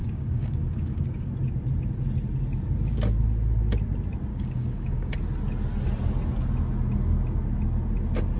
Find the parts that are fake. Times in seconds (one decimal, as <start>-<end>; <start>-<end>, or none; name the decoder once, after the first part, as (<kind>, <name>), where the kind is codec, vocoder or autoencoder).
0.0-1.3 (codec, DAC); 4.3-5.1

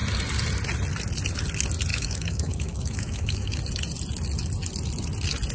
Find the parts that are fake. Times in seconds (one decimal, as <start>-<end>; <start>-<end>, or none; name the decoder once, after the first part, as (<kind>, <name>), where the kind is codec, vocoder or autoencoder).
1.9-3.6 (autoencoder, DAC-VAE)

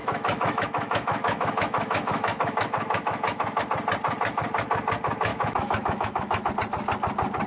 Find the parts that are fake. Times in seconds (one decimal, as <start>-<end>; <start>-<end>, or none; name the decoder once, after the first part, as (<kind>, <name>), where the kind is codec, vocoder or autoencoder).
0.0-3.6 (autoencoder, DAC-VAE); 5.3-6.5

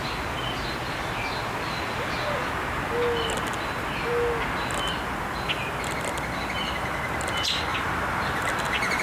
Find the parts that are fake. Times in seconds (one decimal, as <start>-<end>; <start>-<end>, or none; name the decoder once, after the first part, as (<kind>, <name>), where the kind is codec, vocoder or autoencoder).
7.7-9.0 (vocoder, BigVGAN v2)

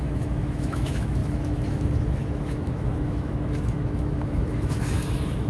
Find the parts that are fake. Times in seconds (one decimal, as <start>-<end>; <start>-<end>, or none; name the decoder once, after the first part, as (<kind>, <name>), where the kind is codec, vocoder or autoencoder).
0.0-5.5 (autoencoder, DAC-VAE)

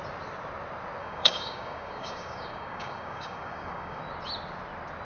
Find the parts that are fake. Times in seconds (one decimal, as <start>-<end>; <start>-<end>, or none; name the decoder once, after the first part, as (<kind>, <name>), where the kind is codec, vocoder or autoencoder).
1.0-4.0 (codec, DAC)

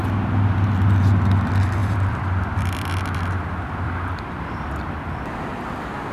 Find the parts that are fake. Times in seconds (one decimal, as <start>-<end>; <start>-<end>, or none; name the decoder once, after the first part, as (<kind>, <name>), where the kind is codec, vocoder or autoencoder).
1.8-4.5 (vocoder, BigVGAN v2)

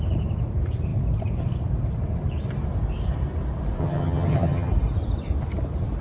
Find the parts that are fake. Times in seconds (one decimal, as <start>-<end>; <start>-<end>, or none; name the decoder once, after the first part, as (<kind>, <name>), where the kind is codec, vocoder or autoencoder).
3.8-4.7 (vocoder, HiFi-GAN)